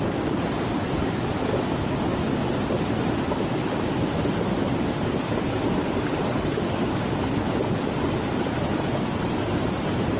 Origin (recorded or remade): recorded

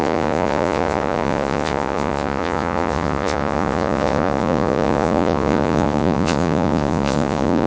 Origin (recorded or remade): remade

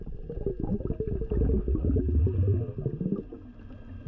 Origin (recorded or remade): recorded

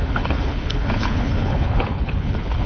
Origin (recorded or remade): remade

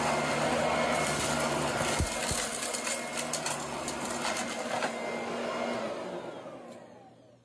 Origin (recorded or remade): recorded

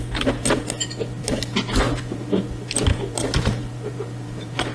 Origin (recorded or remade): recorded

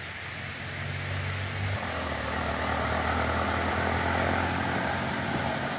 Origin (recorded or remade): recorded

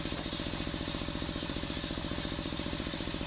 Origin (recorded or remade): remade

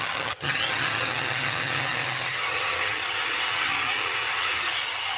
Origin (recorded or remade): remade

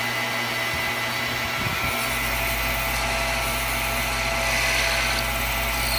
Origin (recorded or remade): recorded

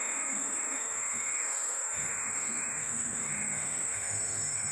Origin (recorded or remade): remade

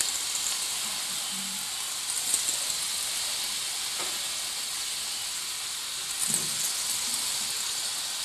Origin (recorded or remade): recorded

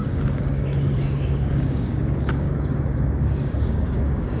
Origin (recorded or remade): remade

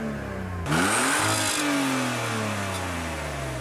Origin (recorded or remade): recorded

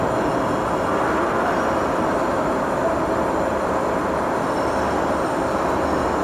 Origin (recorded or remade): recorded